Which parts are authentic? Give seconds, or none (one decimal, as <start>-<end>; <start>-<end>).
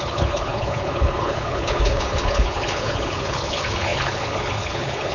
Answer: none